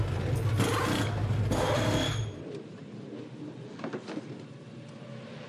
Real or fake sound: real